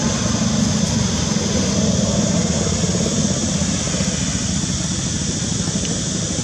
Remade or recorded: recorded